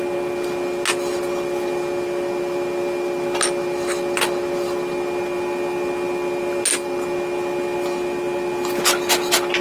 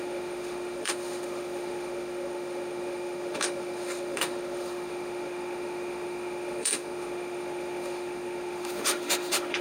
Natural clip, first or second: first